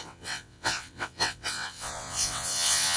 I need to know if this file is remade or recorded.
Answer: remade